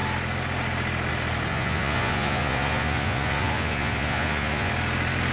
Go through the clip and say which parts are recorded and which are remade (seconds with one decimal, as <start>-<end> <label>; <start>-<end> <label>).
0.0-1.5 recorded; 1.5-4.7 remade; 4.7-5.3 recorded